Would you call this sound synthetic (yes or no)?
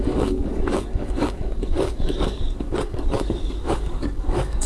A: yes